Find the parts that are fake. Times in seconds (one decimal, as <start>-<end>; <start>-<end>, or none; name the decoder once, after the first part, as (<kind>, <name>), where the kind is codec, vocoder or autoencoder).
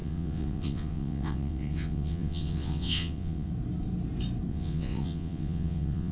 0.0-3.5 (vocoder, WaveNeXt); 4.5-6.1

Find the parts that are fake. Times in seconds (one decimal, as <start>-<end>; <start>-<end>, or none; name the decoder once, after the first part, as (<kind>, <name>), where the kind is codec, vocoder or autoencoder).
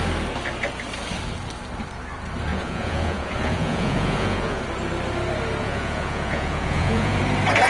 2.5-4.6 (vocoder, Vocos); 5.6-7.2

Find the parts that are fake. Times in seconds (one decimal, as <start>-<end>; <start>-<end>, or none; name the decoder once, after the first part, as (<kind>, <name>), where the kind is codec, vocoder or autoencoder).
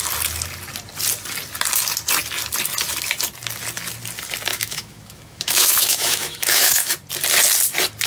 4.5-6.9 (autoencoder, DAC-VAE)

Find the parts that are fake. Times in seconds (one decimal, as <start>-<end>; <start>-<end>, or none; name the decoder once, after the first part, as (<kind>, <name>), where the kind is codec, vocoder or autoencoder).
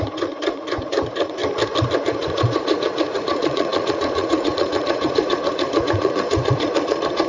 0.0-1.4 (vocoder, Vocos); 2.0-7.3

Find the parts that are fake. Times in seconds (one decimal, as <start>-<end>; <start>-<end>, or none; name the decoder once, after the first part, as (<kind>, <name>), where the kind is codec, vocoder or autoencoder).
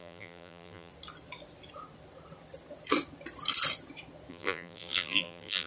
0.0-0.9 (vocoder, BigVGAN v2); 4.3-5.7